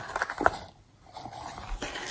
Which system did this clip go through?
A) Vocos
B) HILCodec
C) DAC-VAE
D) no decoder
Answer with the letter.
D